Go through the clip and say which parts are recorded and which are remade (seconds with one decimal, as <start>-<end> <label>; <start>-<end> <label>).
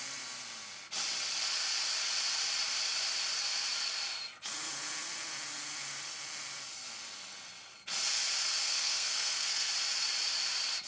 0.0-8.6 recorded; 8.6-9.7 remade; 9.7-10.9 recorded